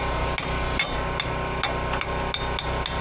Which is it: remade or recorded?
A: recorded